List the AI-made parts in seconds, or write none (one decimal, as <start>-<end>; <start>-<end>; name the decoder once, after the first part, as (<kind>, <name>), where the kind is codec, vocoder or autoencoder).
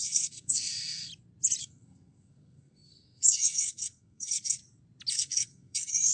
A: 0.0-1.1 (codec, SNAC); 1.6-4.6; 5.1-6.1